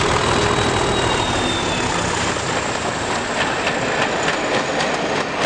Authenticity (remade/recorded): recorded